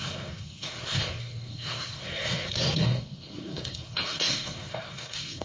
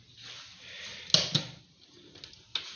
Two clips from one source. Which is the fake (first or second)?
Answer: first